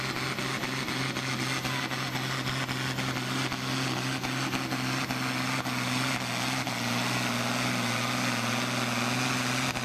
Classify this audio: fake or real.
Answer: real